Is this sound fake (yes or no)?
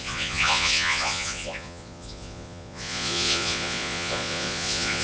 yes